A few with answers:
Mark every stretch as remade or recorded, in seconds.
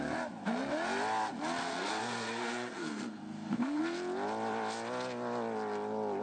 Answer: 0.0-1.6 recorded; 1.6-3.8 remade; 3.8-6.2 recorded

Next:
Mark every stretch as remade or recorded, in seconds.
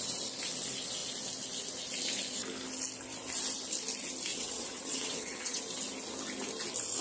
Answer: 0.0-4.3 recorded; 4.3-5.6 remade; 5.6-7.0 recorded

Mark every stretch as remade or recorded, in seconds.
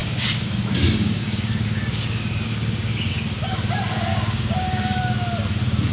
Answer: 0.0-3.2 remade; 3.2-4.1 recorded; 4.1-5.0 remade; 5.0-5.9 recorded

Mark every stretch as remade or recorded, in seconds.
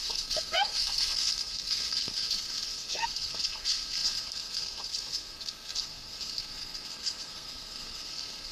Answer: 0.0-8.5 remade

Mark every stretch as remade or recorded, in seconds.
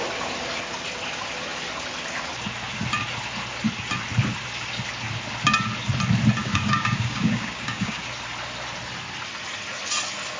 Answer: 0.0-6.4 recorded; 6.4-8.0 remade; 8.0-10.4 recorded